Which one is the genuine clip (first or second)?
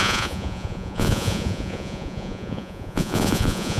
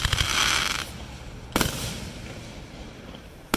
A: second